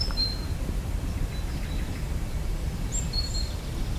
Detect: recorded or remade remade